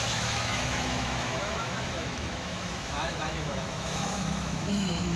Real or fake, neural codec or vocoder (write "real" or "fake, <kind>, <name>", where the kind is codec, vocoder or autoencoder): fake, autoencoder, DAC-VAE